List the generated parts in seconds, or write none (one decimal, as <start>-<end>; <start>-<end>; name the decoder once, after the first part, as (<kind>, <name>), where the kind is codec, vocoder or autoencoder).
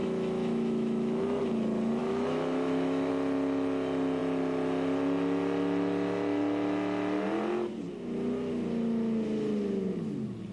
0.0-1.4 (autoencoder, DAC-VAE); 2.0-3.1